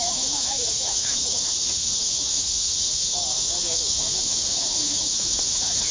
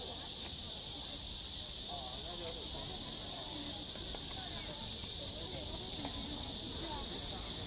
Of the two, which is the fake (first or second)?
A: first